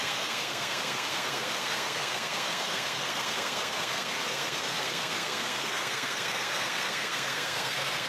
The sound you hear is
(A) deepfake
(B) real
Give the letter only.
A